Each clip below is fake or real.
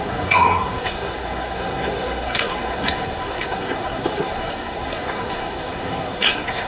fake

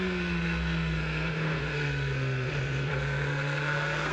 fake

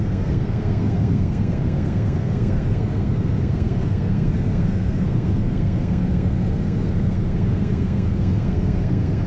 fake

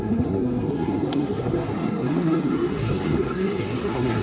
fake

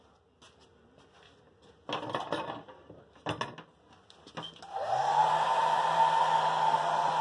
real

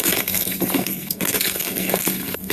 fake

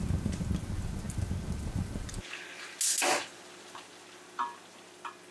real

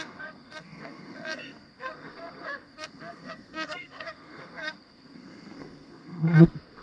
fake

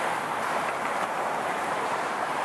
real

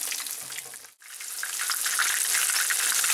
real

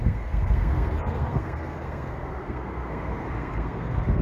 fake